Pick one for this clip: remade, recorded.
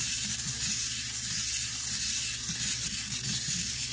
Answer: recorded